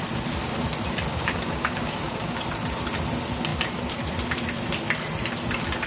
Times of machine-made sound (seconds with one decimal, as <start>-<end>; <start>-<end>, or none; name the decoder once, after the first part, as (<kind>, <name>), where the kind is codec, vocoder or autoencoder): 1.1-2.4 (codec, DAC)